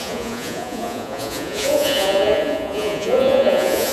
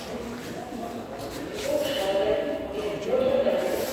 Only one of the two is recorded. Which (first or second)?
second